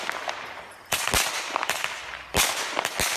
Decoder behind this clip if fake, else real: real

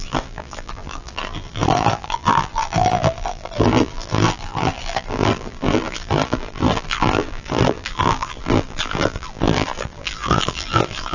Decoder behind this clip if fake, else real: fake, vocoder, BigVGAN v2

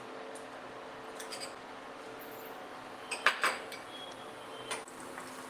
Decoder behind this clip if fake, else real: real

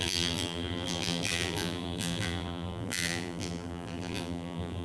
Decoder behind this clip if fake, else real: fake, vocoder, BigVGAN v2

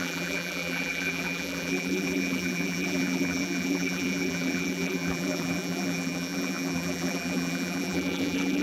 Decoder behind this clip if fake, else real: fake, vocoder, BigVGAN v2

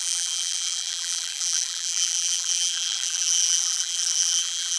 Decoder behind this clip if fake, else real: fake, vocoder, BigVGAN v2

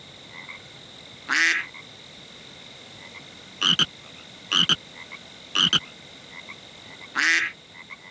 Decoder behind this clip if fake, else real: real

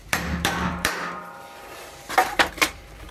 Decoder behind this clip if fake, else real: fake, vocoder, BigVGAN v2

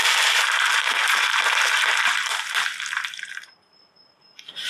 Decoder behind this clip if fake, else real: fake, vocoder, BigVGAN v2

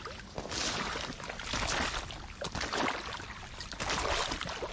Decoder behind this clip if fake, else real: real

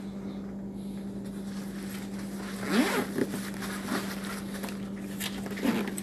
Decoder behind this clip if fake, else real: real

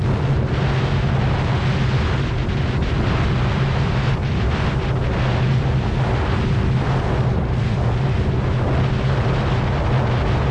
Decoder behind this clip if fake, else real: real